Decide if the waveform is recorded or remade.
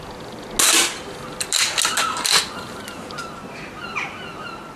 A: recorded